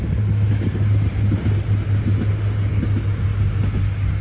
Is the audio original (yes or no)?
yes